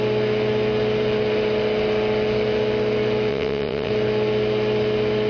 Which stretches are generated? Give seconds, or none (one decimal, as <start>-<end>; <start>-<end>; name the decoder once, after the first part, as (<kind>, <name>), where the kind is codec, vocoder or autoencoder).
3.3-3.9 (vocoder, WaveNeXt)